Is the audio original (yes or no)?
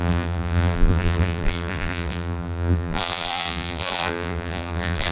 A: no